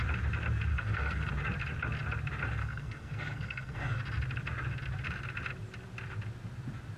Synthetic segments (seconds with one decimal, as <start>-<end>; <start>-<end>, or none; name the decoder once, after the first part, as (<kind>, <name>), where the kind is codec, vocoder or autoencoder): 0.7-1.3 (codec, SNAC); 2.6-4.0